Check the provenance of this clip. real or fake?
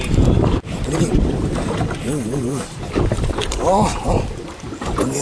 fake